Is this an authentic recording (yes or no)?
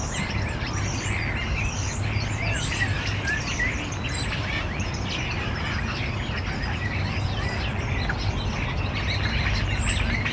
yes